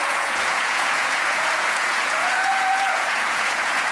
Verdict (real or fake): fake